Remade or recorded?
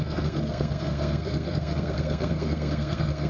remade